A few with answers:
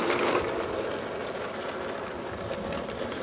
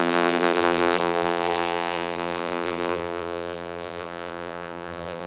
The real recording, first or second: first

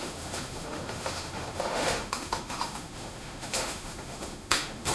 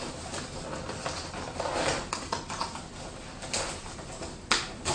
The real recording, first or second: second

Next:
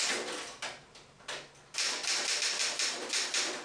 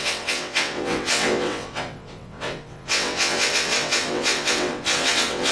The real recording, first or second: first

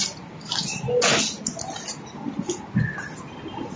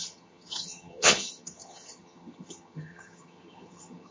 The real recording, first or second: first